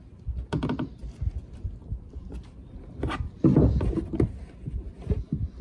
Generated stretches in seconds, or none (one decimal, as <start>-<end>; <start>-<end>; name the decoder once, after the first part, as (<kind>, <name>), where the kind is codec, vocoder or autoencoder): none